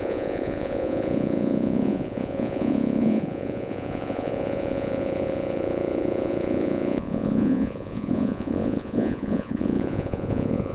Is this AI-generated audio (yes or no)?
yes